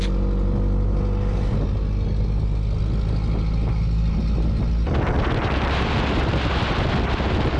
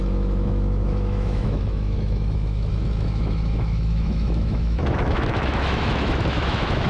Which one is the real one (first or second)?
first